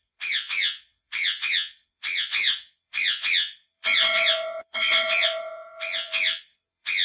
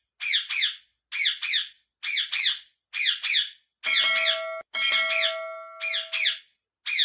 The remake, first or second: first